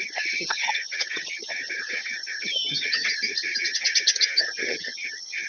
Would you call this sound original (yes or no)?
no